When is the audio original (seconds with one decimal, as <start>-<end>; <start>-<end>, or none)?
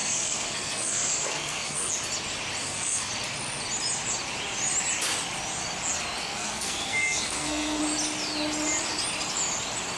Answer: 1.9-2.6; 3.1-6.2; 7.8-10.0